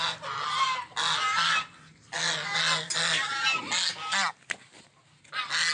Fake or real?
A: real